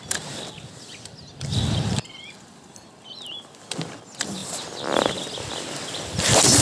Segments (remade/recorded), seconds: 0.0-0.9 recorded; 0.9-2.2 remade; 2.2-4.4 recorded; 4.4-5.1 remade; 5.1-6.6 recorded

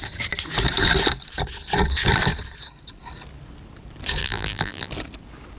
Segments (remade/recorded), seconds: 0.0-4.2 recorded; 4.2-4.9 remade; 4.9-5.6 recorded

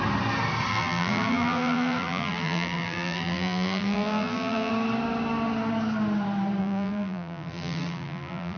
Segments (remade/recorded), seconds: 0.0-0.7 recorded; 0.7-4.7 remade; 4.7-6.6 recorded; 6.6-8.6 remade

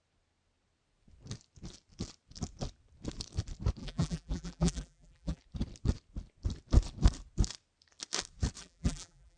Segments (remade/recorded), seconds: 0.0-3.8 recorded; 3.8-5.4 remade; 5.4-8.6 recorded; 8.6-9.4 remade

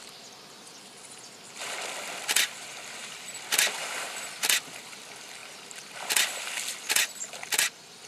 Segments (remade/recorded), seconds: 0.0-3.0 recorded; 3.0-5.0 remade; 5.0-5.4 recorded; 5.4-6.6 remade; 6.6-8.1 recorded

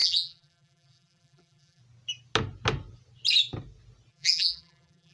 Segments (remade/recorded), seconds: 0.0-1.8 remade; 1.8-4.1 recorded; 4.1-5.1 remade

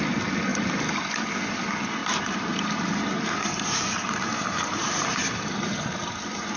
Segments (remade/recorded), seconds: 0.0-2.0 recorded; 2.0-5.5 remade; 5.5-6.6 recorded

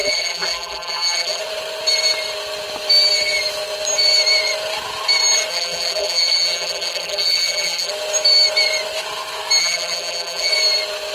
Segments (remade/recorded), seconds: 0.0-1.4 remade; 1.4-5.5 recorded; 5.5-7.9 remade; 7.9-9.6 recorded; 9.6-10.5 remade; 10.5-11.1 recorded